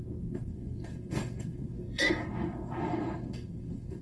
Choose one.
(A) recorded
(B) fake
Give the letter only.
B